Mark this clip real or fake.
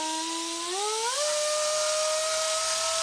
real